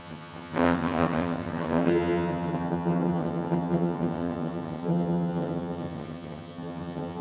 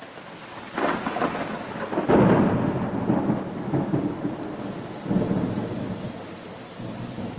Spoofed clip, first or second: first